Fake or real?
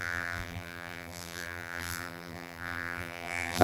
fake